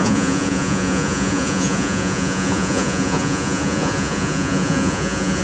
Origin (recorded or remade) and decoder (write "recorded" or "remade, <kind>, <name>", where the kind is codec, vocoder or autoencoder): remade, vocoder, Vocos